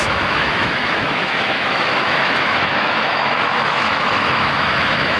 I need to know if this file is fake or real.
fake